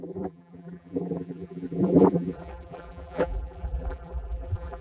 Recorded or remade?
remade